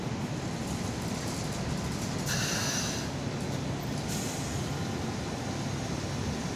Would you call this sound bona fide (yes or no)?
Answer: yes